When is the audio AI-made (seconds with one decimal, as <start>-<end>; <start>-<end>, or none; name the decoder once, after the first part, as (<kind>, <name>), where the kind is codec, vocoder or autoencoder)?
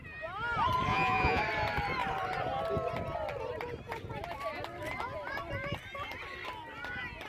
0.9-1.4 (vocoder, Vocos)